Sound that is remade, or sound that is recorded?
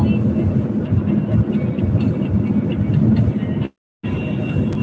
recorded